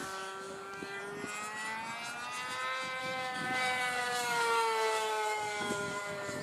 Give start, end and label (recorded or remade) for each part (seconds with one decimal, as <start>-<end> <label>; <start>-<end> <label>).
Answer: 0.0-1.0 remade; 1.0-3.0 recorded; 3.0-6.4 remade